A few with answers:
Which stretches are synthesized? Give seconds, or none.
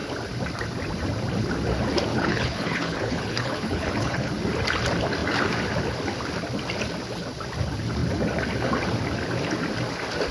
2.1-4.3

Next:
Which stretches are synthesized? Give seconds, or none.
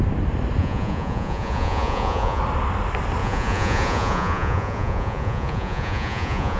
0.6-2.4; 3.2-6.6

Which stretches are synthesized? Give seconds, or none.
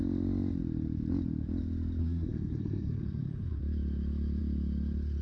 2.0-3.6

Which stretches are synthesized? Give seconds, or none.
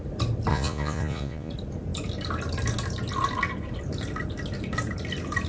0.5-1.5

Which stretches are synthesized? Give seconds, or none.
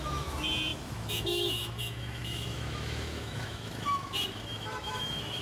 0.0-5.4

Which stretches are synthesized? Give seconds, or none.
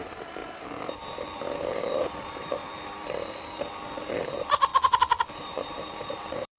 0.0-0.4; 1.6-2.6; 4.2-4.7; 5.4-6.6